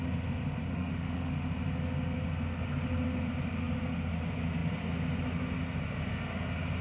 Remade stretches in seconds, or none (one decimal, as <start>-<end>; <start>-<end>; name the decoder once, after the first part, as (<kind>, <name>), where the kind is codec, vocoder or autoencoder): 0.7-1.3 (autoencoder, DAC-VAE)

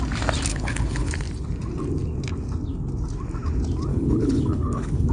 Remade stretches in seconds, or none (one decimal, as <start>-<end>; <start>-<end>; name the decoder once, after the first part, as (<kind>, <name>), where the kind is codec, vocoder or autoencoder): 0.5-1.1 (codec, HILCodec); 3.9-5.1

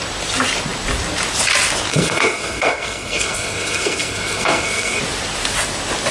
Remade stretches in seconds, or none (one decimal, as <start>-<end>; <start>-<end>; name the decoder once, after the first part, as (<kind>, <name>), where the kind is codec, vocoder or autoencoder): 1.9-5.0 (codec, SNAC)

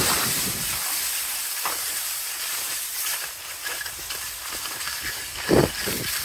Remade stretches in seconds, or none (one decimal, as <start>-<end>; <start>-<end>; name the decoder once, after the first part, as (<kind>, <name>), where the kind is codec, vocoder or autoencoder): 0.0-0.8 (vocoder, BigVGAN v2); 1.7-2.9; 5.1-6.2

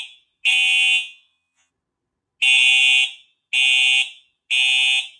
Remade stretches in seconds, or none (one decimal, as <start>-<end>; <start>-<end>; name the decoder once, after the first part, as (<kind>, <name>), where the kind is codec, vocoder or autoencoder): 0.5-1.7 (vocoder, WaveNeXt)

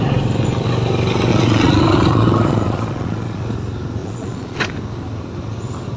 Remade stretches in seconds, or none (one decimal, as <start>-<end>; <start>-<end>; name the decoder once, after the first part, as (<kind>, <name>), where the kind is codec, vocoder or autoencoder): 1.3-3.4 (vocoder, Vocos); 4.0-4.7

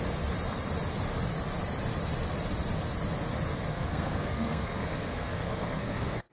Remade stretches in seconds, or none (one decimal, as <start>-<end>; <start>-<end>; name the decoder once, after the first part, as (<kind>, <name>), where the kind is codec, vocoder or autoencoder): 3.7-6.3 (codec, SNAC)

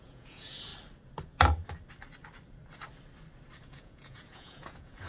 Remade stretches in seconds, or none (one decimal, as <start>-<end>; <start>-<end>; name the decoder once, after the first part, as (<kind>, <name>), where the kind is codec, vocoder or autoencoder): 0.0-0.7 (vocoder, Vocos); 3.6-5.1